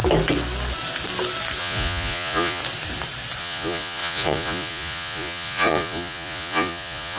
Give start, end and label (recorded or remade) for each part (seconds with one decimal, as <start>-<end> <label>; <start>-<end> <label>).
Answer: 0.0-1.6 recorded; 1.6-2.6 remade; 2.6-3.4 recorded; 3.4-7.2 remade